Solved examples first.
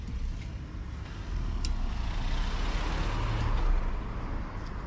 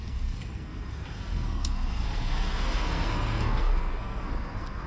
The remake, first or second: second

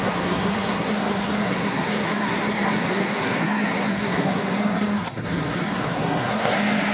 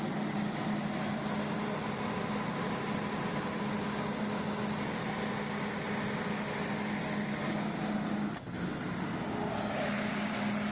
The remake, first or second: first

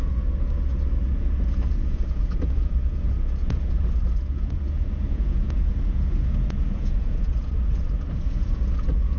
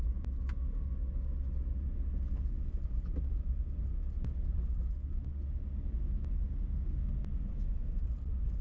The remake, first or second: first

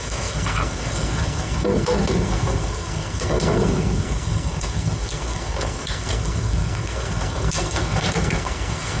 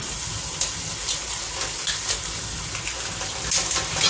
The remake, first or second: first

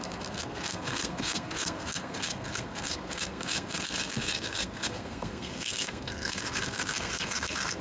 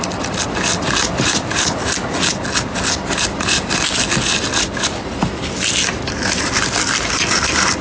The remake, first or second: first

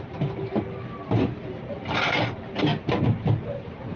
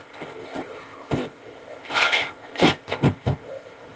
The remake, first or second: second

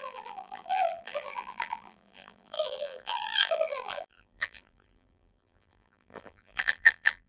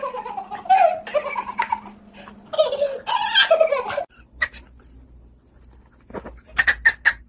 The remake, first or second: first